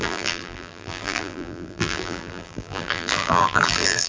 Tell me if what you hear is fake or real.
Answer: fake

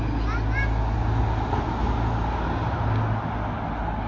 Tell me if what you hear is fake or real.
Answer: real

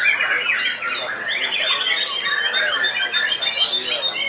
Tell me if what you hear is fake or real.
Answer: real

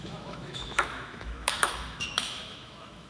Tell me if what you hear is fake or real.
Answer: fake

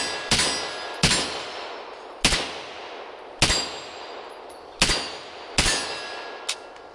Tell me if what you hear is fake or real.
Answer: real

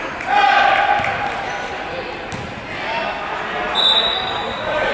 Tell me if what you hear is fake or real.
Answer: real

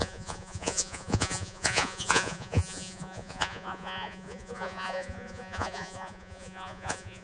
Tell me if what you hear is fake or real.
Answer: fake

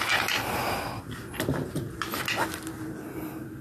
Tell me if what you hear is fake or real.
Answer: real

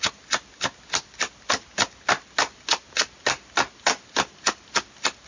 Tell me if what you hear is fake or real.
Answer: real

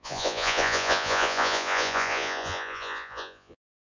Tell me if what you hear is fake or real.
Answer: fake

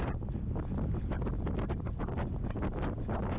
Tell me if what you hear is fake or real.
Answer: real